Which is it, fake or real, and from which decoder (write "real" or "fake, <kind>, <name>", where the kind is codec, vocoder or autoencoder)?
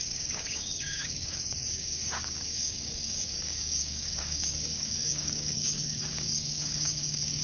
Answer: fake, codec, DAC